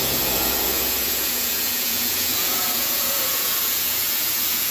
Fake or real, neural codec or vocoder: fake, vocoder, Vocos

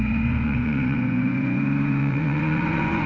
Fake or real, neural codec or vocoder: fake, vocoder, Vocos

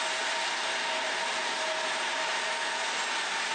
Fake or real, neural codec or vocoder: real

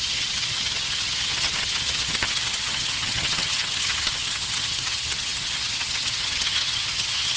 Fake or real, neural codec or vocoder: fake, vocoder, HiFi-GAN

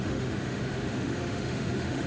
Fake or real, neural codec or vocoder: fake, autoencoder, DAC-VAE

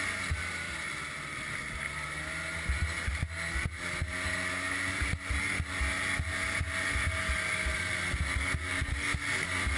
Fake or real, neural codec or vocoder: real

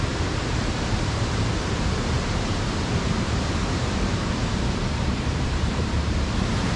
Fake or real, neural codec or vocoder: fake, vocoder, BigVGAN v2